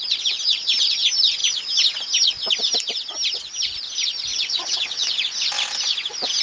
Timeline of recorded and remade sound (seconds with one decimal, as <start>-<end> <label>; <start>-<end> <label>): 0.0-4.3 recorded; 4.3-5.1 remade; 5.1-6.4 recorded